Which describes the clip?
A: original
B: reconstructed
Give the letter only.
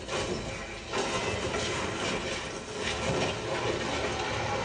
A